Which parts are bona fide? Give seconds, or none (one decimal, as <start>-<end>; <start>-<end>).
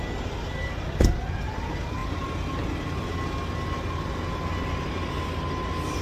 0.0-6.0